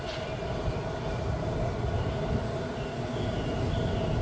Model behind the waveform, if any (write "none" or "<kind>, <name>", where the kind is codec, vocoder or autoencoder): none